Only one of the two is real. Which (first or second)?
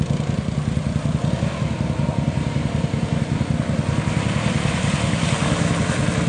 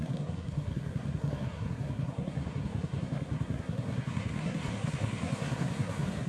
first